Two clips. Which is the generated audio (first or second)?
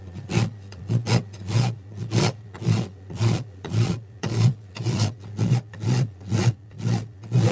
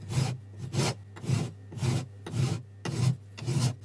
first